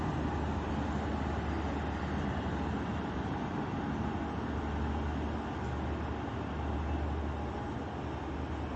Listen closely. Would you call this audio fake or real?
real